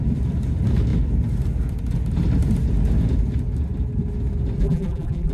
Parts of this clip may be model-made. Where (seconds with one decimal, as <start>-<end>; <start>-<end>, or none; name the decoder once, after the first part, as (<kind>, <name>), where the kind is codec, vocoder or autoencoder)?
4.6-5.3 (vocoder, BigVGAN v2)